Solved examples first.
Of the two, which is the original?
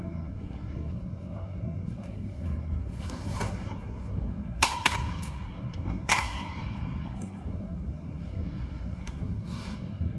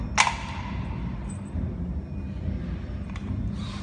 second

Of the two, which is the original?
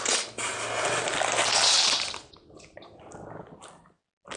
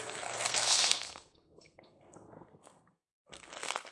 first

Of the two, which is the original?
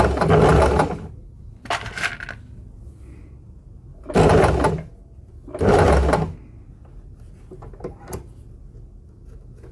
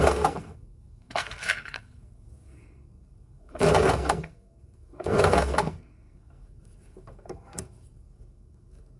first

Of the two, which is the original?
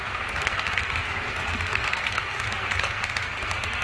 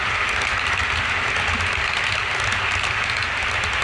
second